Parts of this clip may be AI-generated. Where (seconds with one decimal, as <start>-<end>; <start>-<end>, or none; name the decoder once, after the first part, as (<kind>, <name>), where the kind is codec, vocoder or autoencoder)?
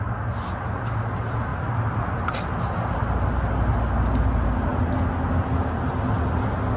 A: none